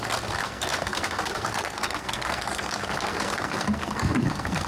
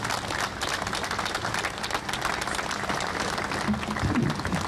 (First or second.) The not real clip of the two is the first